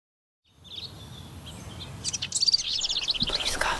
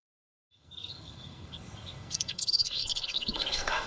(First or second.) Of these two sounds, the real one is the first